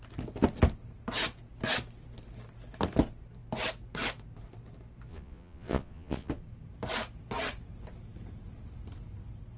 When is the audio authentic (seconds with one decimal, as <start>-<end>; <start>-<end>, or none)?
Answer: 0.0-5.1; 6.3-9.6